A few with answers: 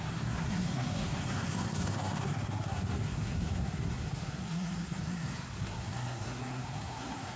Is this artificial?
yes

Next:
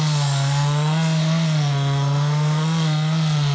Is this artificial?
yes